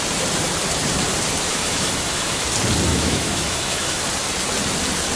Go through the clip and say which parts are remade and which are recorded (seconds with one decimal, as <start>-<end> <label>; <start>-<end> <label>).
0.0-1.5 recorded; 1.5-2.4 remade; 2.4-2.9 recorded; 2.9-4.0 remade; 4.0-5.2 recorded